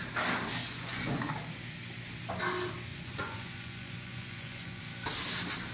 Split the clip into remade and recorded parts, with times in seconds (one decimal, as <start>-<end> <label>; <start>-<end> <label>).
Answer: 0.0-0.6 recorded; 0.6-1.2 remade; 1.2-2.9 recorded; 2.9-4.8 remade; 4.8-5.7 recorded

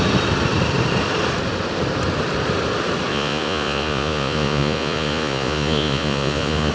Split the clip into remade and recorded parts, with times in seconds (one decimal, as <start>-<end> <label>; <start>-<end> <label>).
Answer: 0.0-3.1 recorded; 3.1-6.7 remade

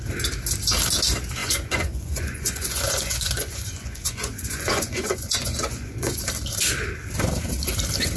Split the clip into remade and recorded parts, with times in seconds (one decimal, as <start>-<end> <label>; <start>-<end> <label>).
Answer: 0.0-1.4 recorded; 1.4-6.2 remade; 6.2-8.2 recorded

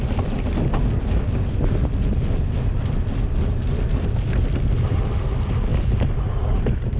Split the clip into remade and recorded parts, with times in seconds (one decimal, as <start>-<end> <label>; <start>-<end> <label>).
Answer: 0.0-7.0 recorded

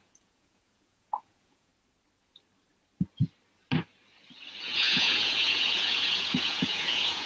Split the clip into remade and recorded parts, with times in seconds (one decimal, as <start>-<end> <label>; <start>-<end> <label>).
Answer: 0.0-1.7 remade; 1.7-4.6 recorded; 4.6-7.3 remade

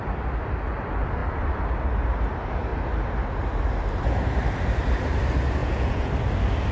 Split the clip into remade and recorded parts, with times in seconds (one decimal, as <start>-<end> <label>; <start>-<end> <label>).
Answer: 0.0-5.6 recorded; 5.6-6.1 remade; 6.1-6.7 recorded

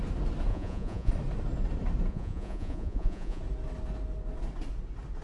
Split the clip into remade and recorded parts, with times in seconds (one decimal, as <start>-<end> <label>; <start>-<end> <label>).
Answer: 0.0-0.5 recorded; 0.5-1.1 remade; 1.1-2.1 recorded; 2.1-3.4 remade; 3.4-5.2 recorded